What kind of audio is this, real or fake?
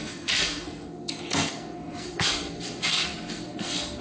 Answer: fake